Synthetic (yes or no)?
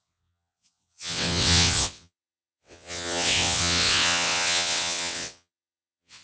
yes